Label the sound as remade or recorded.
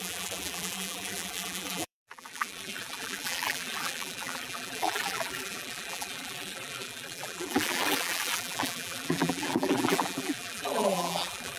remade